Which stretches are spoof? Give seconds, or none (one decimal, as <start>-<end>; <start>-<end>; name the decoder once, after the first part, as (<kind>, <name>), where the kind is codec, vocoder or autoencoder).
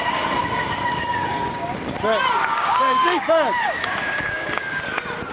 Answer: 0.4-1.7 (codec, DAC); 2.5-4.8